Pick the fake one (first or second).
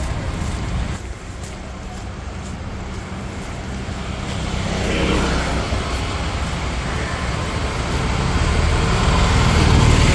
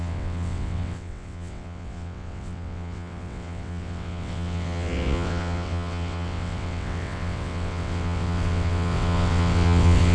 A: second